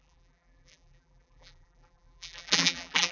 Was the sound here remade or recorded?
remade